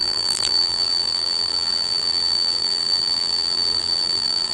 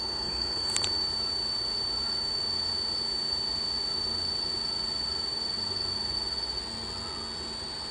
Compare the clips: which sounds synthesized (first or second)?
first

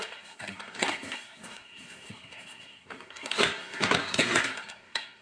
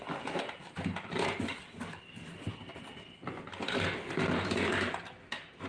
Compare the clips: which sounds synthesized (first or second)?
first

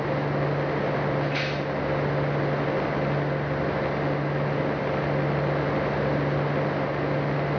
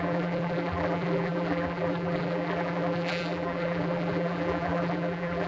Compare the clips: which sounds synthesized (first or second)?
second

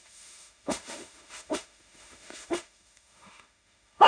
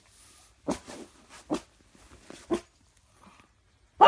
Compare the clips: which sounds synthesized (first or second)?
first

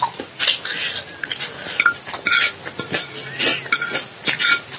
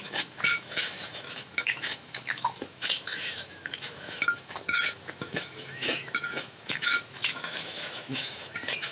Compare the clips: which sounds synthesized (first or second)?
second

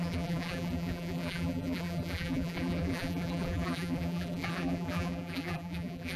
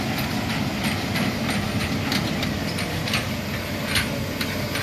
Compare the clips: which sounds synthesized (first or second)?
first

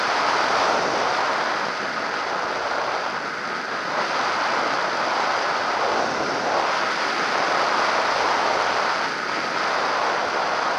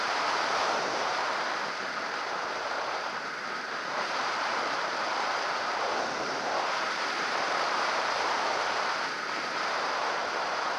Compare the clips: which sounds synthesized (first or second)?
second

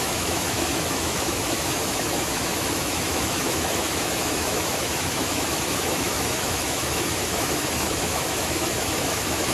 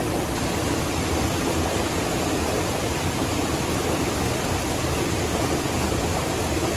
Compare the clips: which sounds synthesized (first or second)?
first